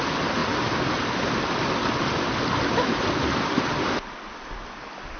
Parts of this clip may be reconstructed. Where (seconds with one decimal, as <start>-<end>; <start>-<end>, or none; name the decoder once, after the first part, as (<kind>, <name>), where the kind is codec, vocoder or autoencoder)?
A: none